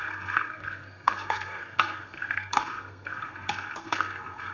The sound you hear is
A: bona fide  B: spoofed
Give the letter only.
B